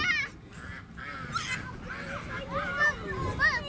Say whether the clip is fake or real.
real